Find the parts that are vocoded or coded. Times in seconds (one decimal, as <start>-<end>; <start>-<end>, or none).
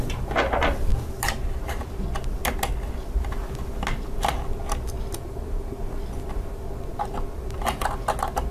none